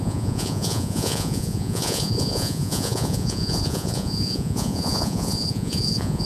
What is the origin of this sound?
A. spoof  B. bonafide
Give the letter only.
A